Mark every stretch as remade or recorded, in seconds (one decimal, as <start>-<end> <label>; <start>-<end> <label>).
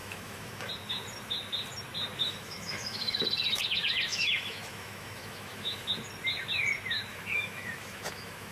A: 0.0-0.7 remade; 0.7-2.2 recorded; 2.2-3.2 remade; 3.2-4.1 recorded; 4.1-5.9 remade; 5.9-7.1 recorded; 7.1-8.5 remade